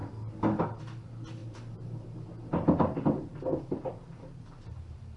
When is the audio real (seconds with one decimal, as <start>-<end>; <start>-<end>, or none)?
0.0-0.6